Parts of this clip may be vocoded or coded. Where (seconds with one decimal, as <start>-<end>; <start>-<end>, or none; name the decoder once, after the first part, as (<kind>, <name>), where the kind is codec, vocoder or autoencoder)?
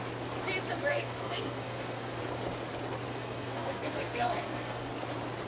0.9-2.2 (codec, SNAC); 3.1-4.9